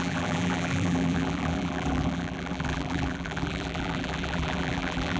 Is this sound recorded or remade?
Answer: remade